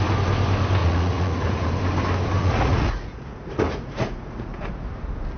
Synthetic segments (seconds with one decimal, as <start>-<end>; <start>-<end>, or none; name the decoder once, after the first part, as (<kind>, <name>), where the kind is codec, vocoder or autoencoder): 0.8-1.7 (vocoder, Vocos); 2.4-4.7